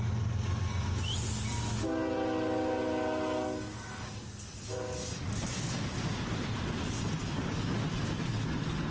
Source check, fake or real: real